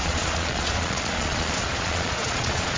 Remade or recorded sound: remade